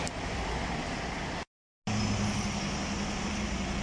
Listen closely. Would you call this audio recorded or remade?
recorded